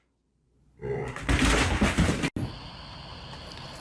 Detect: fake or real real